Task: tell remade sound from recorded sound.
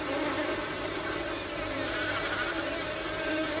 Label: recorded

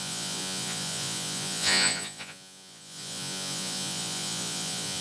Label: remade